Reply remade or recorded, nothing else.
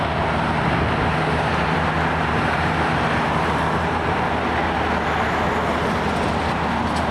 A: recorded